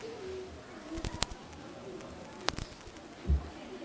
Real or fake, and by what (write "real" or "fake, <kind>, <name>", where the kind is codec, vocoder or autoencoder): real